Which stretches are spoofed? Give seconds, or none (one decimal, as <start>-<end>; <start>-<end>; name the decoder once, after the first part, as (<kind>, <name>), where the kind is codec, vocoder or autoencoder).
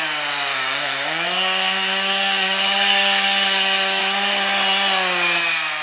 0.5-4.0 (codec, DAC)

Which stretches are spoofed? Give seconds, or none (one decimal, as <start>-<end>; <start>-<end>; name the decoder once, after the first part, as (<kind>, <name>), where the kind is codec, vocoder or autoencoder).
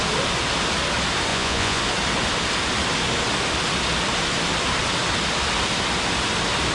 1.3-1.8 (vocoder, Vocos)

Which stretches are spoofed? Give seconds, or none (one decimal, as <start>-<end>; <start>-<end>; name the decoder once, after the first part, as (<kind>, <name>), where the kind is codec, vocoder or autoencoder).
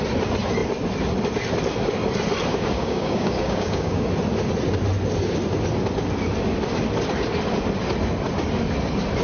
2.5-4.0 (codec, DAC)